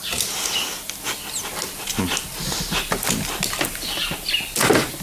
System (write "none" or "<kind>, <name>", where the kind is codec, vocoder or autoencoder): none